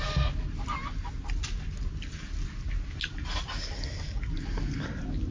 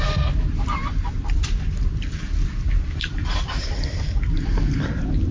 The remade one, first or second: second